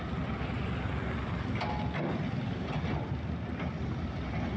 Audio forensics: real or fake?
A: real